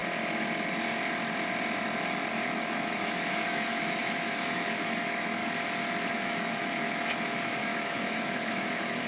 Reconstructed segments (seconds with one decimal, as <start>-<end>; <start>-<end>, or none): 2.3-5.4; 6.1-9.1